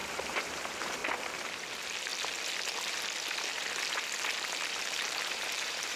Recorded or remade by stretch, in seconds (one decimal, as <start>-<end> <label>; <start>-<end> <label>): 0.0-1.0 remade; 1.0-1.7 recorded; 1.7-2.1 remade; 2.1-4.5 recorded; 4.5-6.0 remade